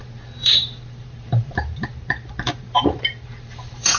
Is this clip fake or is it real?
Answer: fake